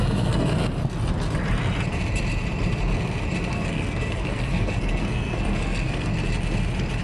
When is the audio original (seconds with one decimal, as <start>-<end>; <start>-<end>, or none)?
0.5-3.5; 6.1-7.0